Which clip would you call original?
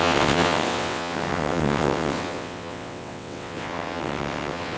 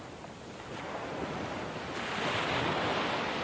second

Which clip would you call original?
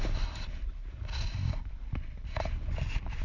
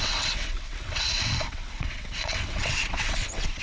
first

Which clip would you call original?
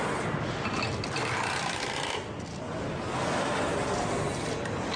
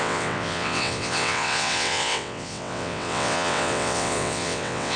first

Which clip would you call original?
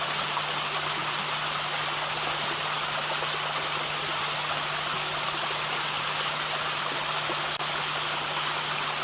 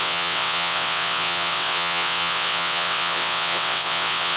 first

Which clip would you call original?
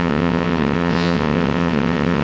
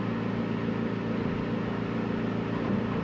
second